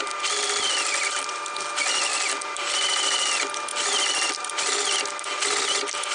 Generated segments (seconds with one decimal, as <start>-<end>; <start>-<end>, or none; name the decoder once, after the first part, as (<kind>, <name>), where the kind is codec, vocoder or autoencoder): 2.1-3.3 (vocoder, BigVGAN v2)

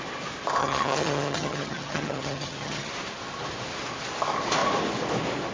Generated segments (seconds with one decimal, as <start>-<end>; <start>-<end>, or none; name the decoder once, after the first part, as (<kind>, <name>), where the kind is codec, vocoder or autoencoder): 0.6-2.9 (vocoder, HiFi-GAN)

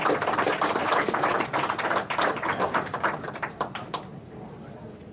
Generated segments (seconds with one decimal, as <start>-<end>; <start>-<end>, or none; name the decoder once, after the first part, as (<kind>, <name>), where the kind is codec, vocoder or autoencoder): 0.8-3.9 (vocoder, BigVGAN v2)

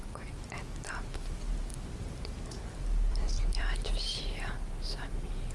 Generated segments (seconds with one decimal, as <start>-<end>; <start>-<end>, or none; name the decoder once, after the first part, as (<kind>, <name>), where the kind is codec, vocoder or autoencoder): 0.9-5.5 (vocoder, BigVGAN v2)

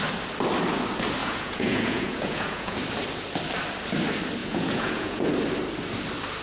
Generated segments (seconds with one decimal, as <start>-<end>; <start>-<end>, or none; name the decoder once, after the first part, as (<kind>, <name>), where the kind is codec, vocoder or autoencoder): 1.2-2.8 (vocoder, Vocos); 4.4-5.3

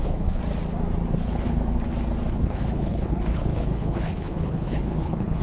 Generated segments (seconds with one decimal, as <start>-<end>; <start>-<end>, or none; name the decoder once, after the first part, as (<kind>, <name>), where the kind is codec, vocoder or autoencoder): 0.0-0.4 (codec, HILCodec); 1.1-1.6; 2.3-5.4